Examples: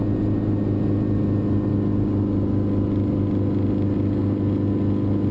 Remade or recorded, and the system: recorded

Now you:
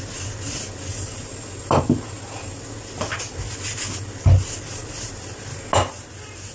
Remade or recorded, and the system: recorded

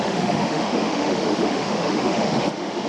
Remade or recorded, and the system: remade, autoencoder, DAC-VAE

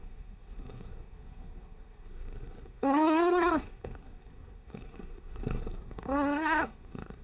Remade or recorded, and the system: remade, codec, SNAC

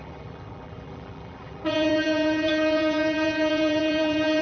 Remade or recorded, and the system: remade, vocoder, BigVGAN v2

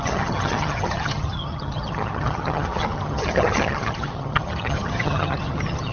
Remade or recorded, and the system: remade, vocoder, HiFi-GAN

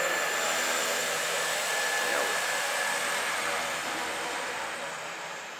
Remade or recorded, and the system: remade, vocoder, BigVGAN v2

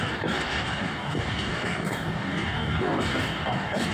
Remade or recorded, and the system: remade, codec, DAC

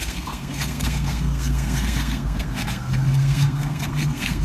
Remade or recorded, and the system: remade, codec, SNAC